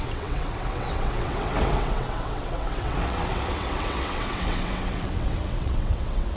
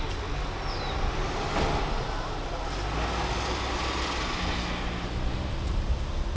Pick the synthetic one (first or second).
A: first